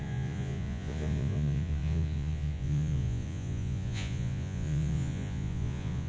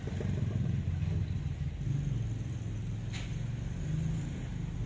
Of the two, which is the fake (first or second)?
first